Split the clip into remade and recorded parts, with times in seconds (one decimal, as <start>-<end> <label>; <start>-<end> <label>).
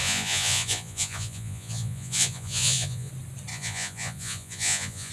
0.0-3.1 remade; 3.1-3.5 recorded; 3.5-5.1 remade